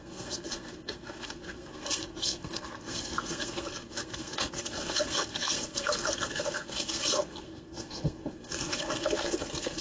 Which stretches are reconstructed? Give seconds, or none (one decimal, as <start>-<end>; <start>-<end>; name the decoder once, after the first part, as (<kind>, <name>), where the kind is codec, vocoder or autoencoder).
0.0-9.8 (codec, SNAC)